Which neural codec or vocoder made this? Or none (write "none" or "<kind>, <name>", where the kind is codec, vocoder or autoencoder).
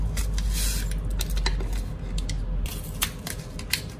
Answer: none